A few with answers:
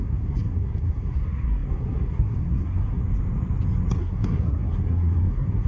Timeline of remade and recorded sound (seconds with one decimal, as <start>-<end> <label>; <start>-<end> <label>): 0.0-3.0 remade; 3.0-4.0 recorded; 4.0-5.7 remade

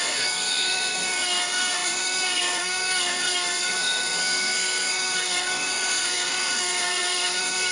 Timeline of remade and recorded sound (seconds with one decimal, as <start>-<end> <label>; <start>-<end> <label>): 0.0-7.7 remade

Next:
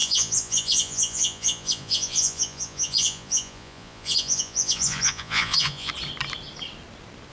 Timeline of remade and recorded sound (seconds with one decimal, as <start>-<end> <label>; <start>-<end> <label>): 0.0-5.9 remade; 5.9-7.3 recorded